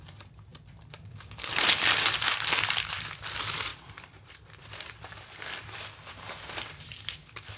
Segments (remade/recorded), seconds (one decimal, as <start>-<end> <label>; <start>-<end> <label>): 0.0-0.5 recorded; 0.5-1.5 remade; 1.5-3.7 recorded; 3.7-4.6 remade; 4.6-7.6 recorded